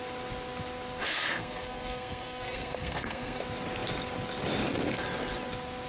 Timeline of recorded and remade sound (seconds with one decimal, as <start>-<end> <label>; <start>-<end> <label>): 0.0-1.0 recorded; 1.0-3.4 remade; 3.4-5.9 recorded